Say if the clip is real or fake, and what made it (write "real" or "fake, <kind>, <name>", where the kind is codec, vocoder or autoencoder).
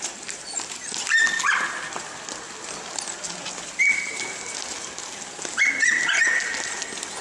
real